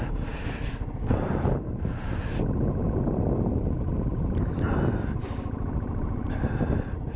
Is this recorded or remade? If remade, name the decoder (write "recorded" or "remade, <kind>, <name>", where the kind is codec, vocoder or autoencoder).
recorded